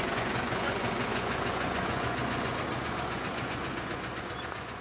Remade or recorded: remade